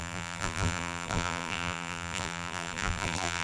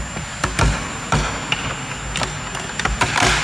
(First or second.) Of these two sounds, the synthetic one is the first